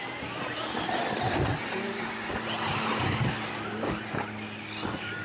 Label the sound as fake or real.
real